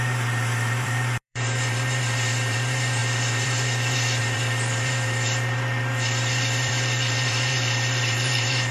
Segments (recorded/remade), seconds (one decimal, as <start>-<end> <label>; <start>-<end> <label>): 0.0-8.7 remade